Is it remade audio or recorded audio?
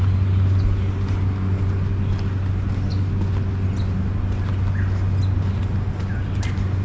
recorded